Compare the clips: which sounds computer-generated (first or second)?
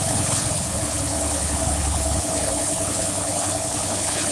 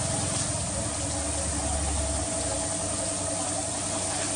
first